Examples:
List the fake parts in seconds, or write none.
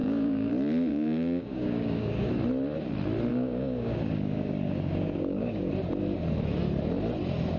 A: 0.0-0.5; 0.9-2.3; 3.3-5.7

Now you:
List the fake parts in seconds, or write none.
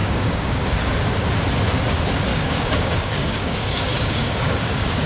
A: 0.0-0.6; 2.3-5.1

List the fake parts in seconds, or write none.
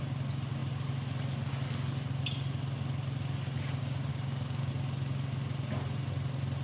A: 4.1-4.7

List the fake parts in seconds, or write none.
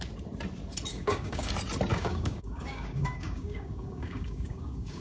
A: 0.9-1.5; 1.9-5.0